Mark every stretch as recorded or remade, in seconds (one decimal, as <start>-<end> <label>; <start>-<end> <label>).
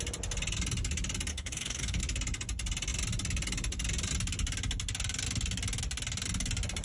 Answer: 0.0-1.3 recorded; 1.3-2.0 remade; 2.0-6.8 recorded